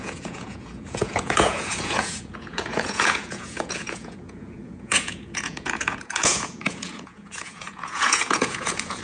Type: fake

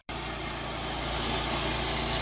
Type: real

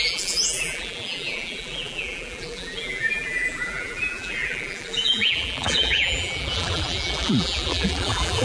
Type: fake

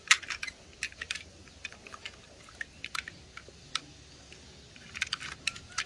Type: real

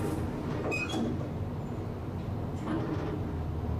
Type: real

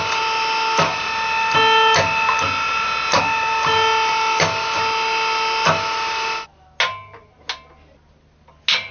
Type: real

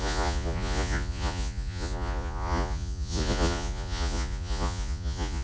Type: fake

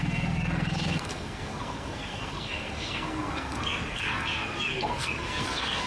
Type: fake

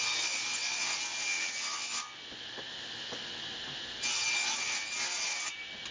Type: real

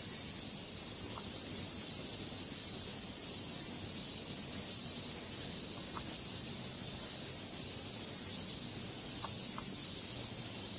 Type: real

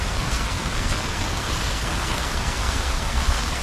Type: fake